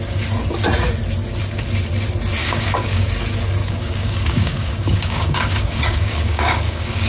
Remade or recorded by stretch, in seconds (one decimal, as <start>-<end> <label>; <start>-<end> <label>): 0.0-2.4 recorded; 2.4-3.1 remade; 3.1-3.6 recorded; 3.6-7.1 remade